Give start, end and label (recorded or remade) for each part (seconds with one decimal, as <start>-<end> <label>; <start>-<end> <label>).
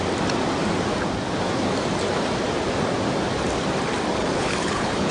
0.0-4.2 recorded; 4.2-5.1 remade